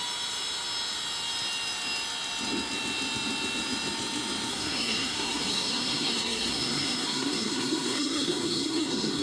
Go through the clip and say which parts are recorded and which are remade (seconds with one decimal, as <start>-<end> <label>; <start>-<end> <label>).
0.0-4.5 recorded; 4.5-9.2 remade